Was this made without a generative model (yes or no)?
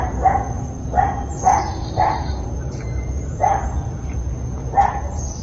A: no